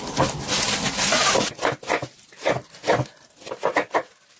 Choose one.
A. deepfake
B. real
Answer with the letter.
B